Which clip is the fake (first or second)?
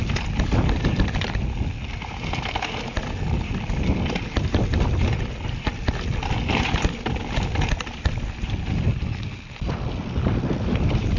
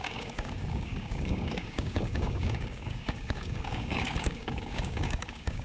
second